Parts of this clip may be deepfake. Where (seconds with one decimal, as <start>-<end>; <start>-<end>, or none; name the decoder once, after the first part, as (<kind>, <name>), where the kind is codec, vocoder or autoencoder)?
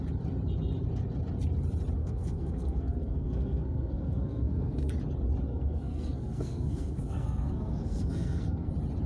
2.0-4.9 (codec, SNAC); 5.5-8.7